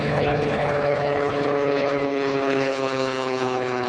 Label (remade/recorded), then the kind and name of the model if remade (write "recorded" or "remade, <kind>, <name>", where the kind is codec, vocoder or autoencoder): remade, codec, HILCodec